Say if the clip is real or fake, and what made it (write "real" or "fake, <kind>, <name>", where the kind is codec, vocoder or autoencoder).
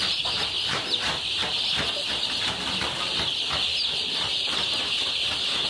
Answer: real